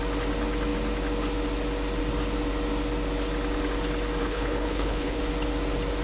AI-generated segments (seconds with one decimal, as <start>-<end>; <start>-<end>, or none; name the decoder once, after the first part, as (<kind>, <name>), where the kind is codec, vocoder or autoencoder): 4.2-5.2 (codec, HILCodec)